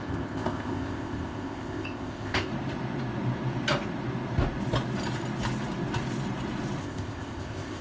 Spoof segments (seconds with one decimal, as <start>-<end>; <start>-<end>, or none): 0.0-2.5; 6.8-7.8